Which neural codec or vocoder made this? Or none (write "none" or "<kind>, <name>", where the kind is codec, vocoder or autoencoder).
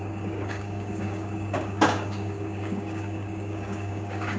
codec, DAC